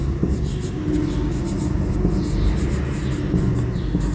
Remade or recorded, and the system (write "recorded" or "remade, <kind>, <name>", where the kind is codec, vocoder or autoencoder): recorded